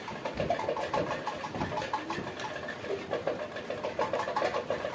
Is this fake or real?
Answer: real